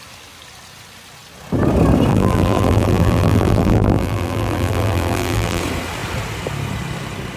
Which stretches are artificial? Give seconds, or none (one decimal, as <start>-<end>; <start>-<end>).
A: 2.1-5.6